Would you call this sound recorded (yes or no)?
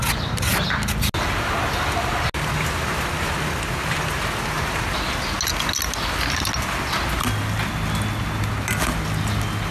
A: yes